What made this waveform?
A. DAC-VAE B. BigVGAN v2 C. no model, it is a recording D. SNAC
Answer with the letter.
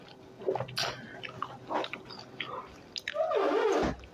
C